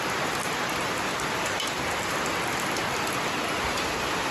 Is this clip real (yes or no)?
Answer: yes